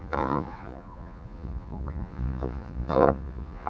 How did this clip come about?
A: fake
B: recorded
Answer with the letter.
A